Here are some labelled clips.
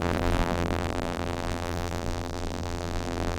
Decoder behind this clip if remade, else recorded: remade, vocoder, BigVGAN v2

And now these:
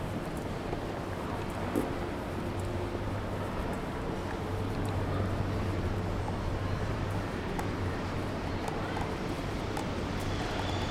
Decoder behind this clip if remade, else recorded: remade, vocoder, BigVGAN v2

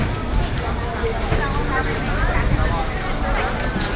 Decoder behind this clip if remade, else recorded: recorded